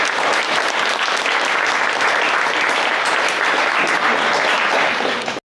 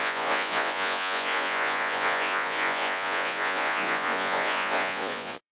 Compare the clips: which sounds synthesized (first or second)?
second